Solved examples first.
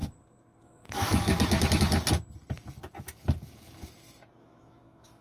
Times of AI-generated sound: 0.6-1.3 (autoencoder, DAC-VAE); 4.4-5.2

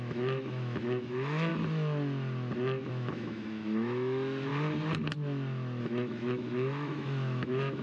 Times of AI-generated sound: 0.0-1.5 (autoencoder, DAC-VAE); 2.9-4.5; 5.8-7.8

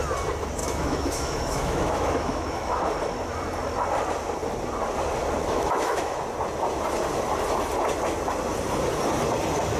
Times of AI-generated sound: 0.6-2.8 (autoencoder, DAC-VAE); 5.4-6.2

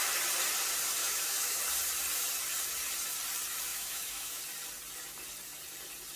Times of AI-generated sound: 1.0-1.6 (autoencoder, DAC-VAE); 3.7-4.4